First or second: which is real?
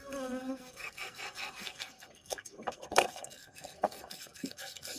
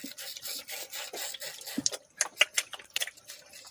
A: second